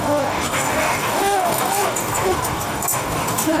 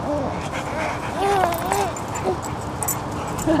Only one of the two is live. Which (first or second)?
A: second